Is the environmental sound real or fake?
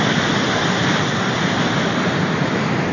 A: fake